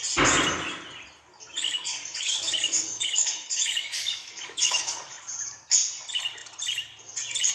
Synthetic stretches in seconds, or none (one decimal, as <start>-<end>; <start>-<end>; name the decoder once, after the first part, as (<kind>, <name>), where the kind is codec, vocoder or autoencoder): 1.3-5.2 (codec, DAC)